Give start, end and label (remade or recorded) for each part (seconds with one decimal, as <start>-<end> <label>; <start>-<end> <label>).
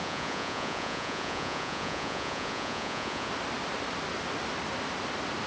0.0-3.3 remade; 3.3-5.5 recorded